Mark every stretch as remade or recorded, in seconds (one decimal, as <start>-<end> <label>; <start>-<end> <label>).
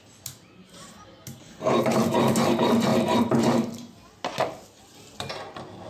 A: 0.0-5.9 recorded